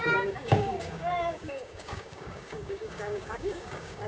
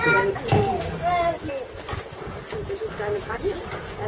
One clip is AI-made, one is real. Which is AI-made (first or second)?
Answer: first